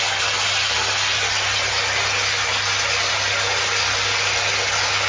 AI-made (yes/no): no